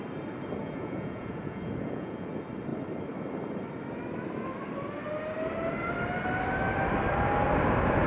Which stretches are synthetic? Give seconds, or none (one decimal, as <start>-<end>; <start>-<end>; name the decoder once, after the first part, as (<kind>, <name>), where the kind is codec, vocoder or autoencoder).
0.6-2.3 (vocoder, Vocos)